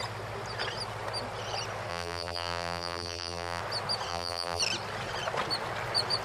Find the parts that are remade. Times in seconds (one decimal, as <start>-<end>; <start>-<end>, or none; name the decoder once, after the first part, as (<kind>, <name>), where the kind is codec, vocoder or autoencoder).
1.9-3.6 (vocoder, BigVGAN v2); 4.1-4.6